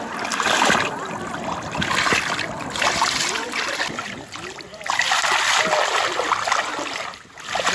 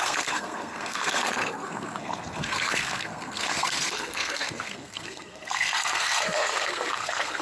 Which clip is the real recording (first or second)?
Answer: first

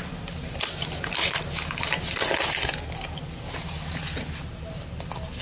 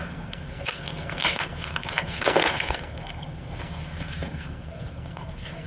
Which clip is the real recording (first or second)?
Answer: first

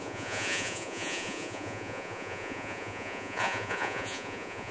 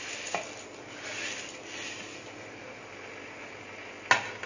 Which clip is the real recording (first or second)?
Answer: second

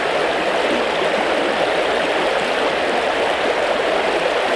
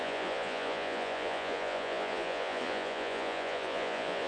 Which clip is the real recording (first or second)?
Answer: first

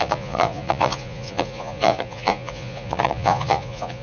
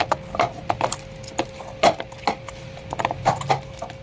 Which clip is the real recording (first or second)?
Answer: second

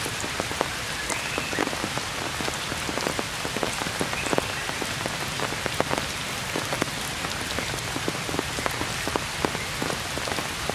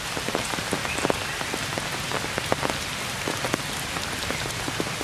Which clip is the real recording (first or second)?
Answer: second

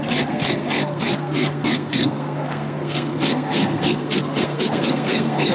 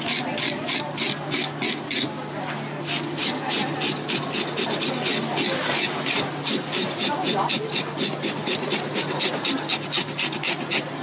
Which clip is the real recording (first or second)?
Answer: second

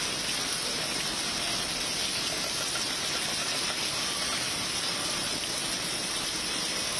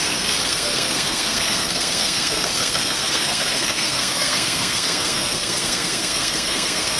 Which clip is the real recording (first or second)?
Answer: first